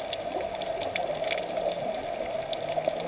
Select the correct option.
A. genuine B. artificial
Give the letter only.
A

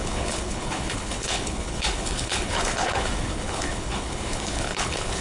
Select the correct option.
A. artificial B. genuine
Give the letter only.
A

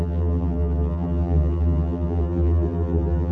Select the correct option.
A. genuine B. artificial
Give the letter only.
B